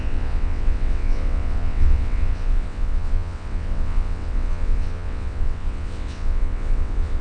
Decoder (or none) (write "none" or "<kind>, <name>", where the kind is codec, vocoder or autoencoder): vocoder, WaveNeXt